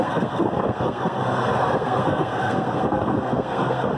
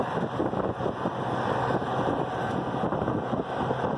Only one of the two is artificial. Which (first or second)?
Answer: first